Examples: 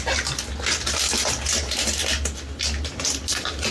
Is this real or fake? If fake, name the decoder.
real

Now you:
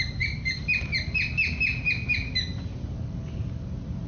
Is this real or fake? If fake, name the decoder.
real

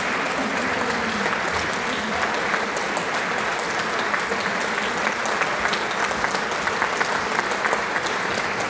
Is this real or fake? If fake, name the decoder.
real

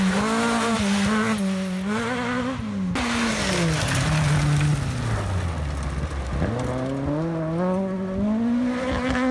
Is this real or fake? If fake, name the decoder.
real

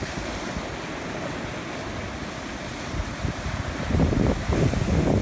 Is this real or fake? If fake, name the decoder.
real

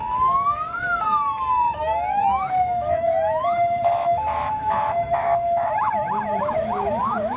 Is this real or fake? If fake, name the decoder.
fake, autoencoder, DAC-VAE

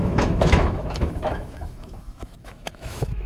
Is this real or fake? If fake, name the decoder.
fake, autoencoder, DAC-VAE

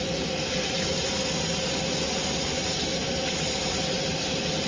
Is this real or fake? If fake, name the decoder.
real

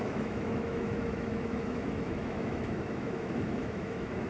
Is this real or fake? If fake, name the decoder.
fake, autoencoder, DAC-VAE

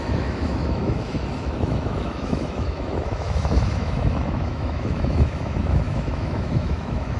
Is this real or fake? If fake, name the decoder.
fake, autoencoder, DAC-VAE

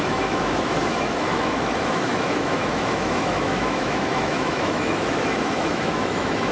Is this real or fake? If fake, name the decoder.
fake, autoencoder, DAC-VAE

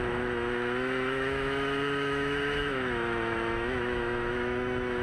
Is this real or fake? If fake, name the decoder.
fake, autoencoder, DAC-VAE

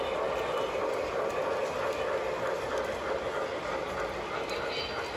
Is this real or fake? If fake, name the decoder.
real